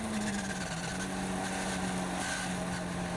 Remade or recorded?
recorded